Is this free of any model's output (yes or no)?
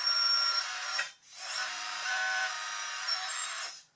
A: no